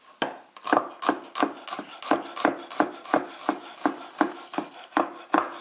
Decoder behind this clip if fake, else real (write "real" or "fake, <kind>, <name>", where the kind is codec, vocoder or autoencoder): real